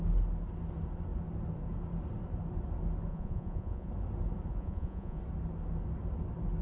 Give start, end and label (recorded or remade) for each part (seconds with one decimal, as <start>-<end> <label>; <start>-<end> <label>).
0.0-3.1 recorded; 3.1-3.9 remade; 3.9-4.5 recorded; 4.5-5.2 remade; 5.2-6.6 recorded